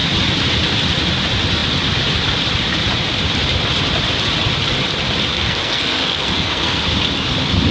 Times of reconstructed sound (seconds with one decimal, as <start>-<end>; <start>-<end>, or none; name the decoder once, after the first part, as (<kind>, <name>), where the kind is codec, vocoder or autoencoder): 5.3-6.8 (codec, SNAC)